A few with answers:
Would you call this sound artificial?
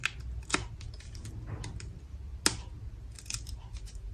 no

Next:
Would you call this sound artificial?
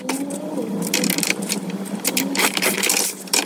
yes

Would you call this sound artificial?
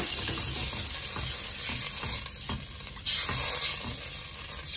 no